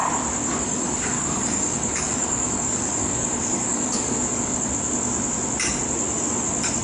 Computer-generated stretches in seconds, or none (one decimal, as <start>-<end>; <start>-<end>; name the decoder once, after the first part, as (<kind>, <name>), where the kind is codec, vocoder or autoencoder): 0.5-4.7 (codec, DAC)